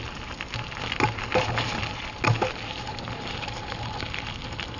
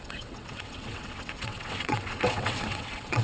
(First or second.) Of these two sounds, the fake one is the second